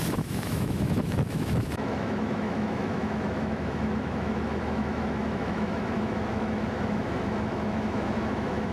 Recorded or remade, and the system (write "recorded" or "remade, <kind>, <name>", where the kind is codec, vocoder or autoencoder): remade, autoencoder, DAC-VAE